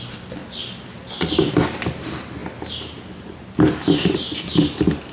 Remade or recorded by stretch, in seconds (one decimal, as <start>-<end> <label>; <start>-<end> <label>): 0.0-5.1 recorded